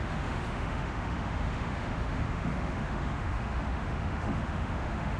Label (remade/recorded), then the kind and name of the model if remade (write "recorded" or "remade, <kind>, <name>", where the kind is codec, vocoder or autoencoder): remade, autoencoder, DAC-VAE